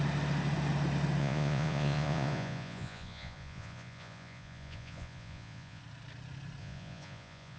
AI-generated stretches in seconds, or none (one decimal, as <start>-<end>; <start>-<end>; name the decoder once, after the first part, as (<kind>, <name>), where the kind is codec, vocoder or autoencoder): 1.2-5.8 (vocoder, Vocos); 6.6-7.6